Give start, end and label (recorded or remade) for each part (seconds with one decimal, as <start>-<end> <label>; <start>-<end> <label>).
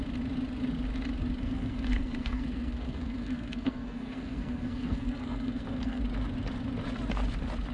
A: 0.0-1.4 recorded; 1.4-6.0 remade; 6.0-7.7 recorded